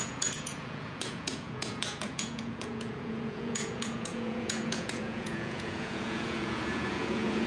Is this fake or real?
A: fake